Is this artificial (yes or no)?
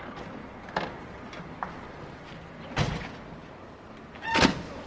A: no